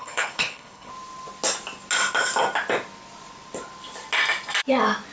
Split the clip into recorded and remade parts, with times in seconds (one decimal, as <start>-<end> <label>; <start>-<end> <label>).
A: 0.0-0.9 remade; 0.9-5.1 recorded